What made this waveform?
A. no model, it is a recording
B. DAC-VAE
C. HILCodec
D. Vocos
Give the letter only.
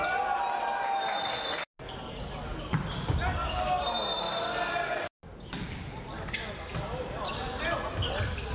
A